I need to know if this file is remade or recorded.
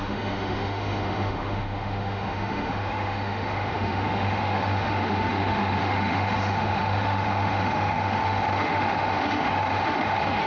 remade